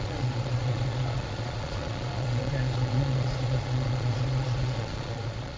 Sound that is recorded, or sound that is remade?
remade